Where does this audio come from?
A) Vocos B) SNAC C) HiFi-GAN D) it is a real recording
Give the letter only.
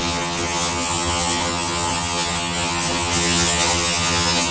C